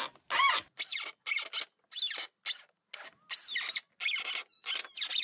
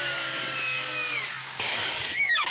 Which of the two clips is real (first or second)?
first